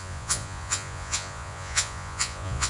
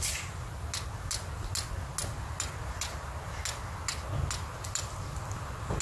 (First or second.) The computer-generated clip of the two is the first